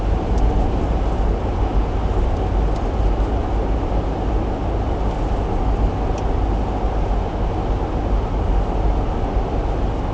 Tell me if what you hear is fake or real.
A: real